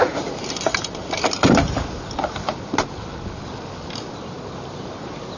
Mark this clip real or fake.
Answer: real